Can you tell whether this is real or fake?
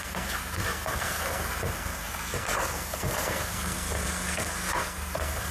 fake